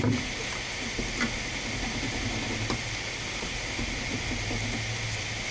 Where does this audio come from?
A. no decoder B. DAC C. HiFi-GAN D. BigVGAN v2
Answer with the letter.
A